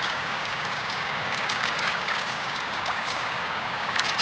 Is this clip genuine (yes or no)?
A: no